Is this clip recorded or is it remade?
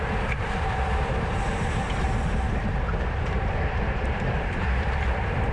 remade